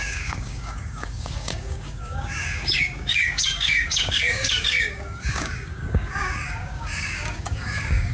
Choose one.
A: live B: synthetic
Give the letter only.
B